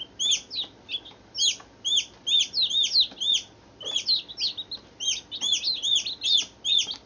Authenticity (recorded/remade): recorded